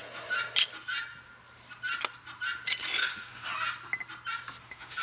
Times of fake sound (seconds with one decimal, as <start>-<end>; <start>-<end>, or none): 3.0-3.5; 4.6-5.0